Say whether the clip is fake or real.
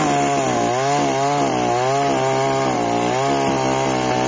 real